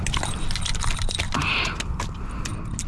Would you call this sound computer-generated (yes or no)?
no